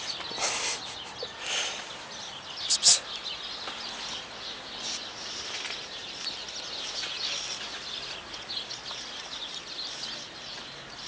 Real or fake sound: real